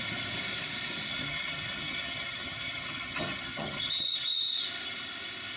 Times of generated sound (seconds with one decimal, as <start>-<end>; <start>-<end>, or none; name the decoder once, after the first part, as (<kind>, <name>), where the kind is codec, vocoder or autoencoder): 1.1-4.5 (vocoder, HiFi-GAN)